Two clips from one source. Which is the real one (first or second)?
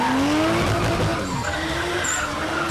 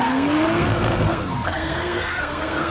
first